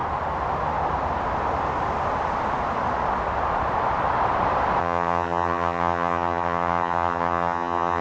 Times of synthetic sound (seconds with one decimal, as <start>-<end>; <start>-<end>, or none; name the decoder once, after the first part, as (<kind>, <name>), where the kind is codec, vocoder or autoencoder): 4.8-8.0 (vocoder, HiFi-GAN)